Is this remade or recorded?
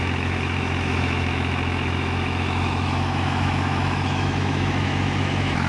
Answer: remade